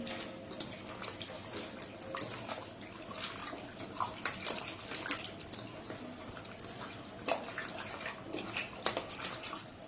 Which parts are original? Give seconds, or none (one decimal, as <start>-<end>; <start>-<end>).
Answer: 0.0-9.9